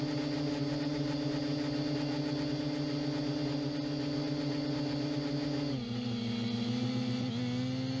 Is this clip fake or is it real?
real